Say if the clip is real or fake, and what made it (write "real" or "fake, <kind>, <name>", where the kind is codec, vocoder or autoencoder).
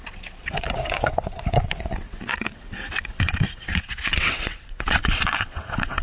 fake, vocoder, WaveNeXt